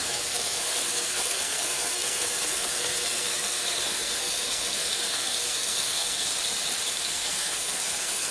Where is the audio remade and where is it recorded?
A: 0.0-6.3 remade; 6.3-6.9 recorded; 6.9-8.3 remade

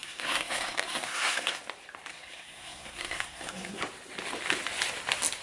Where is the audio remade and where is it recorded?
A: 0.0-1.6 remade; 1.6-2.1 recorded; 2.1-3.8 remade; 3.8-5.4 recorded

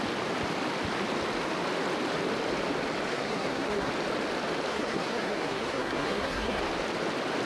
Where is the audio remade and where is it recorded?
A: 0.0-3.1 recorded; 3.1-3.9 remade; 3.9-4.7 recorded; 4.7-6.6 remade; 6.6-7.5 recorded

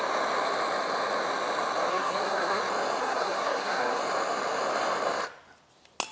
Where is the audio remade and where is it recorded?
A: 0.0-1.9 recorded; 1.9-2.6 remade; 2.6-3.0 recorded; 3.0-4.0 remade; 4.0-6.1 recorded

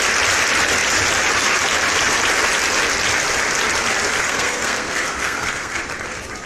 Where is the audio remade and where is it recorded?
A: 0.0-4.2 recorded; 4.2-5.8 remade; 5.8-6.5 recorded

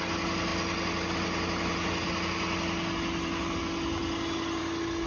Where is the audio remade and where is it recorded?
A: 0.0-5.1 recorded

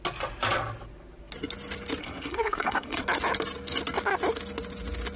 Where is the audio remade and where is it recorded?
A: 0.0-2.0 recorded; 2.0-3.0 remade; 3.0-5.2 recorded